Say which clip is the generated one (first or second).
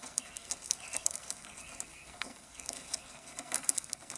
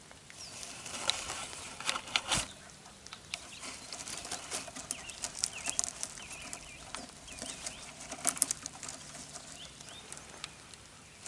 first